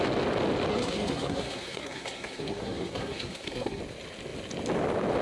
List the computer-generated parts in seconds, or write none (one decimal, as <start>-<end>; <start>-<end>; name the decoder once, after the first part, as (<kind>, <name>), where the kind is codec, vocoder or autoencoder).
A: 0.7-3.8 (codec, SNAC)